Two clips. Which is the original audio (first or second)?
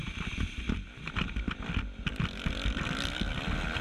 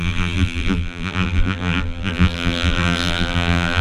first